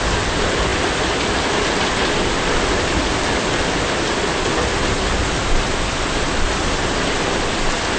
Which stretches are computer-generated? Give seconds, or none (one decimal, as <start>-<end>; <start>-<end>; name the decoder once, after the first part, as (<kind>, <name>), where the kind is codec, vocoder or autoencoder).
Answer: none